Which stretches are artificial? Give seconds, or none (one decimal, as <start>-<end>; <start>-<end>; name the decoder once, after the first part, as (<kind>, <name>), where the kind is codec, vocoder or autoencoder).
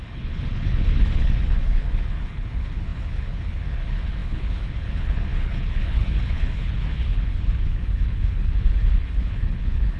0.0-10.0 (codec, HILCodec)